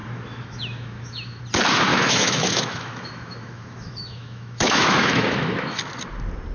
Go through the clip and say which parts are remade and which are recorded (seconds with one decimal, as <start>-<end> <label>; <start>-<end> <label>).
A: 0.0-1.4 remade; 1.4-1.9 recorded; 1.9-5.8 remade; 5.8-6.5 recorded